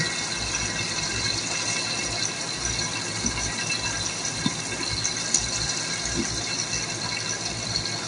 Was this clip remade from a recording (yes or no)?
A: no